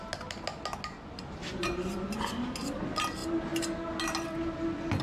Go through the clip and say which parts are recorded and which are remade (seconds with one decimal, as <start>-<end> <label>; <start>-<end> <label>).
0.0-1.4 recorded; 1.4-2.1 remade; 2.1-5.0 recorded